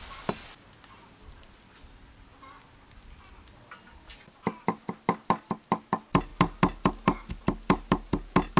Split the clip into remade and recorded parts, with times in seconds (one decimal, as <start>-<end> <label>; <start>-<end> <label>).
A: 0.0-8.6 recorded